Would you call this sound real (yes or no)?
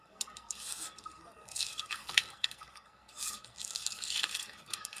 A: no